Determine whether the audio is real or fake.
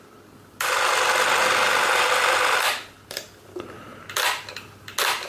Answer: real